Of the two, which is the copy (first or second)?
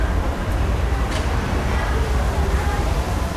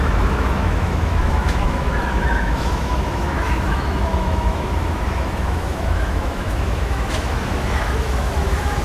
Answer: second